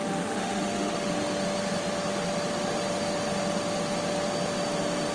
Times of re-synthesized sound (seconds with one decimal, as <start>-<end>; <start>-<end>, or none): 0.0-1.1